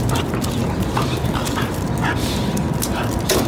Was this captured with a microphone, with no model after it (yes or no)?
yes